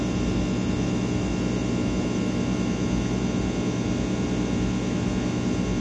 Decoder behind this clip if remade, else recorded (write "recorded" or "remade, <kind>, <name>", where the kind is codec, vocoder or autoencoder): recorded